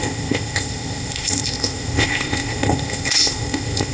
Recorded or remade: remade